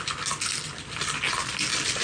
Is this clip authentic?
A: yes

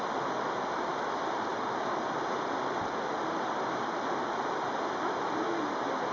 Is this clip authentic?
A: yes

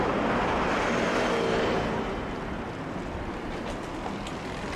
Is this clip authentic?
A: yes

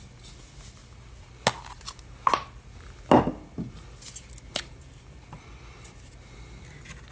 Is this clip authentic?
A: yes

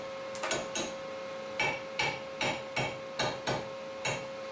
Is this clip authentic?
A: yes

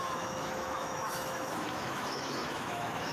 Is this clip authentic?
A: no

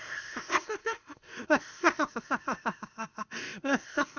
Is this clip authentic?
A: no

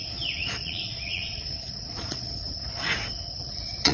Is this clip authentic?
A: no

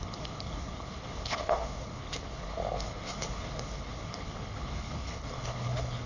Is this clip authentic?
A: no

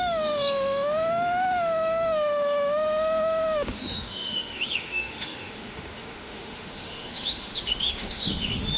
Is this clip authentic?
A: no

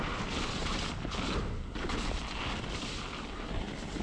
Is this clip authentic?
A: yes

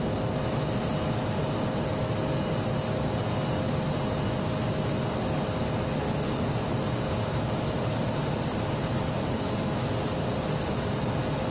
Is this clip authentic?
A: yes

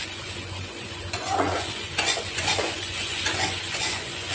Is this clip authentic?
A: no